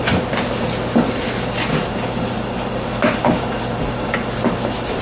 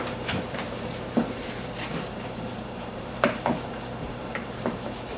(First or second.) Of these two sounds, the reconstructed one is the second